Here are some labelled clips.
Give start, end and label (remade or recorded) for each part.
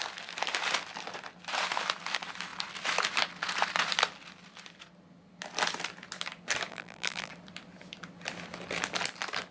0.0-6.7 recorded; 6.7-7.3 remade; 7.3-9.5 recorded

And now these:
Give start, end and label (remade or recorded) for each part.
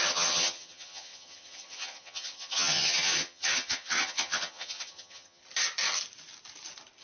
0.0-5.4 remade; 5.4-7.0 recorded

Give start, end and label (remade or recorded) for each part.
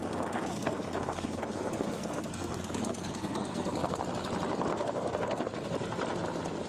0.0-4.0 remade; 4.0-4.7 recorded; 4.7-5.5 remade; 5.5-6.7 recorded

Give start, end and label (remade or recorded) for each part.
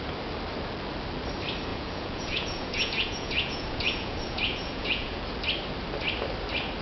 0.0-1.7 recorded; 1.7-5.2 remade; 5.2-6.8 recorded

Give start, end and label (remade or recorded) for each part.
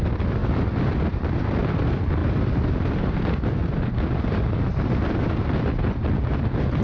0.0-6.0 recorded; 6.0-6.8 remade